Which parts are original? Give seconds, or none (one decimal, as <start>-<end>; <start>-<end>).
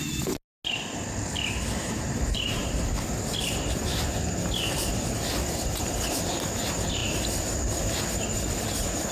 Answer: 0.0-1.8; 2.9-9.1